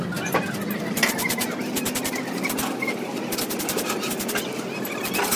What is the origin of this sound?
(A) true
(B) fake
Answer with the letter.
A